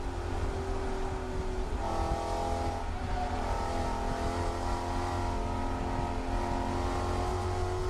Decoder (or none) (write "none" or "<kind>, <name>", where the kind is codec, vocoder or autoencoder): none